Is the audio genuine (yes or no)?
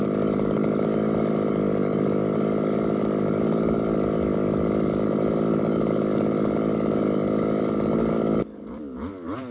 no